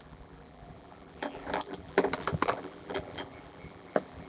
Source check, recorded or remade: remade